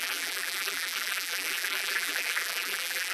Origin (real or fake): fake